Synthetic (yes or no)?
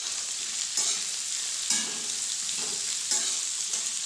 no